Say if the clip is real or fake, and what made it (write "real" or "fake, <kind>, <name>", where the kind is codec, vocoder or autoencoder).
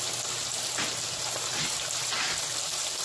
real